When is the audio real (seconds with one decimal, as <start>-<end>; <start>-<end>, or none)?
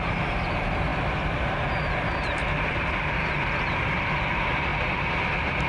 0.9-4.3; 4.7-5.3